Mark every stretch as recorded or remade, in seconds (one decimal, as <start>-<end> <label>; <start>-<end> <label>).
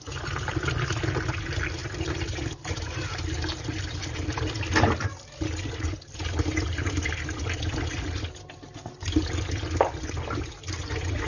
0.0-1.8 recorded; 1.8-4.3 remade; 4.3-11.3 recorded